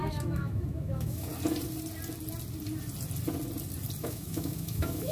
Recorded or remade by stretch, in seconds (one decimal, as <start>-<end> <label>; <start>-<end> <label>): 0.0-1.3 remade; 1.3-4.0 recorded; 4.0-5.1 remade